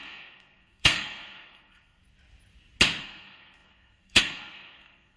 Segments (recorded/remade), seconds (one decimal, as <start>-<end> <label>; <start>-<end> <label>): 0.0-2.0 remade; 2.0-3.0 recorded; 3.0-5.2 remade